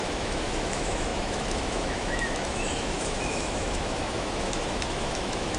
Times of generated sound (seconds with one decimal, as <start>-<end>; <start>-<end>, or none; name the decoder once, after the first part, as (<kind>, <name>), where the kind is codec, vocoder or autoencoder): 0.0-5.6 (autoencoder, DAC-VAE)